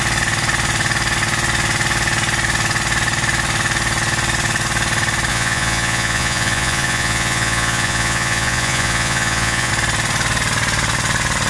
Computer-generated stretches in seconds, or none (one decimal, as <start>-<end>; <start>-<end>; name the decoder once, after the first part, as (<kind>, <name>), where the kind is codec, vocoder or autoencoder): 5.3-9.7 (vocoder, Vocos)